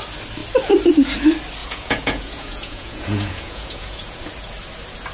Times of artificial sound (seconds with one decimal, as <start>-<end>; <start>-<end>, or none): 1.6-4.3